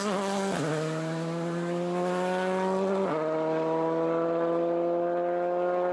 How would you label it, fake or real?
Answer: real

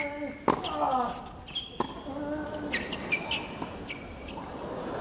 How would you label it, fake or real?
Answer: real